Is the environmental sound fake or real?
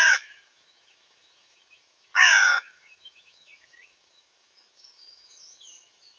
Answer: fake